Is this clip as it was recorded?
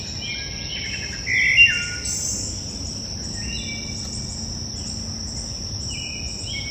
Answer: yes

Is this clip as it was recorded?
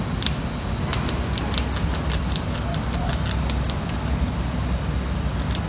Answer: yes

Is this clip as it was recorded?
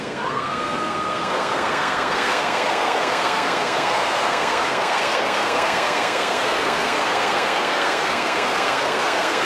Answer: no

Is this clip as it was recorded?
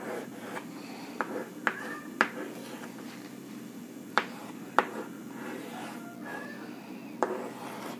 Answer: no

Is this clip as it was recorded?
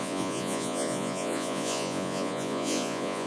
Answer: no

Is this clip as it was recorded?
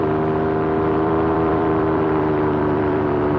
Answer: no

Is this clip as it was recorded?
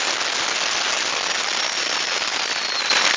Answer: yes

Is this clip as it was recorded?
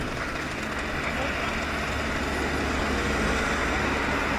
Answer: yes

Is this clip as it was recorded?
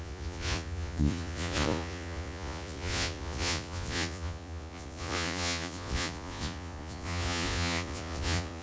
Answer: no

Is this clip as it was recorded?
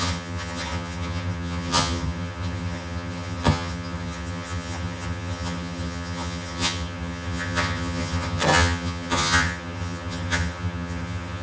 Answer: no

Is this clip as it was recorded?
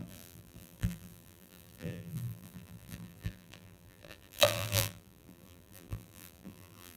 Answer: no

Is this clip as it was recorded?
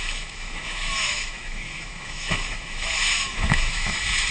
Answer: no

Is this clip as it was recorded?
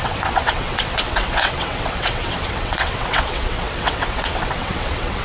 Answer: no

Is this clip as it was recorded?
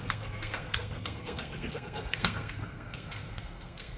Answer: no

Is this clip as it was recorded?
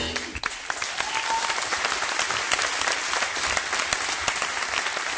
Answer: yes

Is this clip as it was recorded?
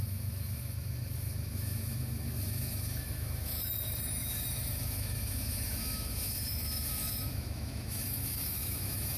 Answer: no